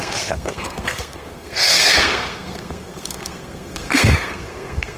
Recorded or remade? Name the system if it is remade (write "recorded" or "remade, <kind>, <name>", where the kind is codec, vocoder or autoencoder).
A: remade, codec, SNAC